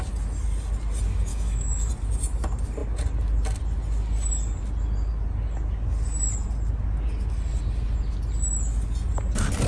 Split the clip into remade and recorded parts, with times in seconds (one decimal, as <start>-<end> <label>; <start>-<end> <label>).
0.0-1.3 recorded; 1.3-1.9 remade; 1.9-9.7 recorded